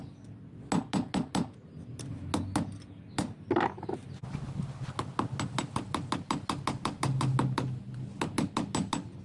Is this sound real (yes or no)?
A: yes